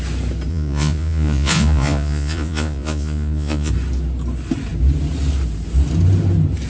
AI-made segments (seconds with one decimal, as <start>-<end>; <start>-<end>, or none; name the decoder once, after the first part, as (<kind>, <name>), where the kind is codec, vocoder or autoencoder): 0.5-3.7 (vocoder, Vocos)